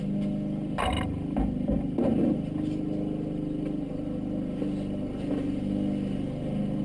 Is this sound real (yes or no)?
yes